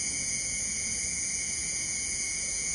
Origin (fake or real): fake